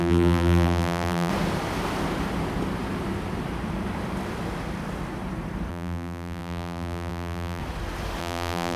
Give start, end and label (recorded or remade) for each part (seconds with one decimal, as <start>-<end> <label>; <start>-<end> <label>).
0.0-1.3 remade; 1.3-5.7 recorded; 5.7-7.6 remade; 7.6-8.2 recorded; 8.2-8.8 remade